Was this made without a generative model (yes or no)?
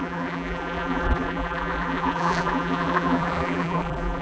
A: no